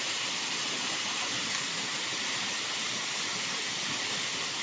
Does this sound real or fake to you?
real